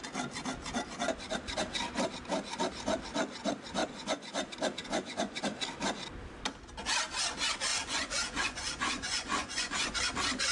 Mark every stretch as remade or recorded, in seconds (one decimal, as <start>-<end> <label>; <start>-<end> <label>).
0.0-3.8 recorded; 3.8-4.3 remade; 4.3-4.8 recorded; 4.8-5.4 remade; 5.4-7.7 recorded; 7.7-10.0 remade; 10.0-10.5 recorded